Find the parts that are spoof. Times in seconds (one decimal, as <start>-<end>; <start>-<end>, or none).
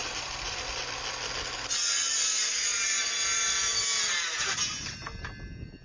0.0-0.8